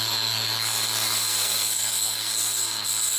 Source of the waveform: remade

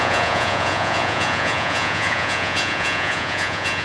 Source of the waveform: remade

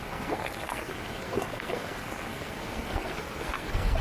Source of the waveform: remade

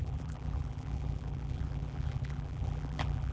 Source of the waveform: remade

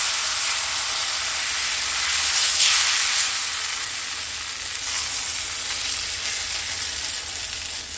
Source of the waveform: recorded